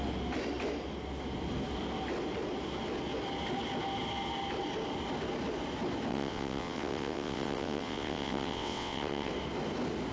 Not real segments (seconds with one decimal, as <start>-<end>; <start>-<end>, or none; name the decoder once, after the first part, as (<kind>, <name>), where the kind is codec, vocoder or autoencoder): 6.1-9.3 (vocoder, WaveNeXt)